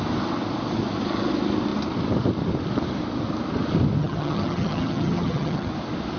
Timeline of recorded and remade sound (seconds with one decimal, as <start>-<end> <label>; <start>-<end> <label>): 0.0-4.0 recorded; 4.0-5.7 remade; 5.7-6.2 recorded